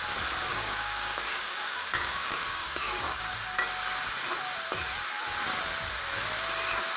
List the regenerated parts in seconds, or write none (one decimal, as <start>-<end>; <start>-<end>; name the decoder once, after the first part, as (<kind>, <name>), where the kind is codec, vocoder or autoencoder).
0.5-3.3 (codec, DAC)